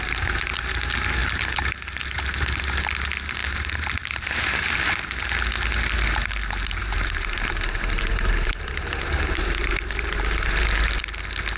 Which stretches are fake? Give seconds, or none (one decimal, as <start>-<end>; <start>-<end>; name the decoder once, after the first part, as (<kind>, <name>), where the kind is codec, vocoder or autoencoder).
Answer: 1.2-2.4 (vocoder, BigVGAN v2); 3.4-4.6; 6.8-11.0